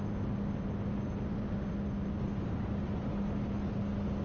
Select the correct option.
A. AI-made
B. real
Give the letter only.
B